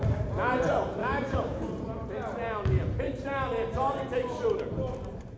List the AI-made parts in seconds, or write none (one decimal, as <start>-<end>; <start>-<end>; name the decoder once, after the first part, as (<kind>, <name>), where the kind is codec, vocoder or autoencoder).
1.0-1.6 (codec, DAC)